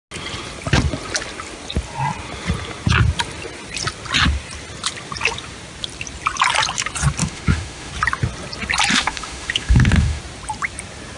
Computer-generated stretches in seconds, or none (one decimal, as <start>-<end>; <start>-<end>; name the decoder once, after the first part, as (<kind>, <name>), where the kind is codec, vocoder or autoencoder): 7.2-7.9 (autoencoder, DAC-VAE); 8.9-10.2